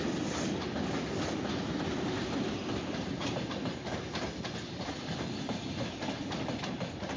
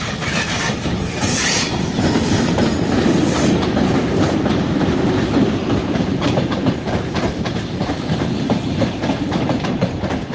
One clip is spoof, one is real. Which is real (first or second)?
first